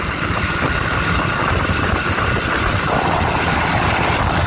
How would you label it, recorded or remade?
recorded